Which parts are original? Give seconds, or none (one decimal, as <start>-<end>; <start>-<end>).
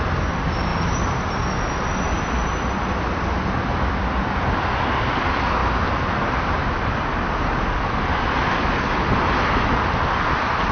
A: 0.0-10.7